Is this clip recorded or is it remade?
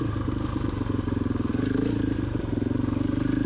remade